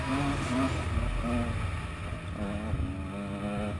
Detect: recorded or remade recorded